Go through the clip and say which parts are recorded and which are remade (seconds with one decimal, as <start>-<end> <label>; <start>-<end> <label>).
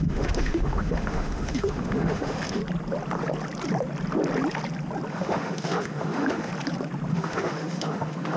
0.0-2.6 remade; 2.6-5.1 recorded; 5.1-6.5 remade; 6.5-7.1 recorded; 7.1-8.4 remade